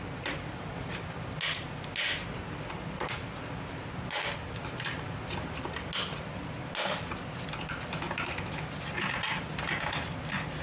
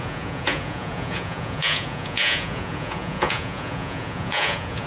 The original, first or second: first